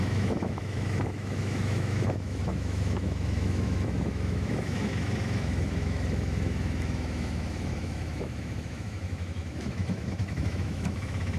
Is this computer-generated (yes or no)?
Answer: yes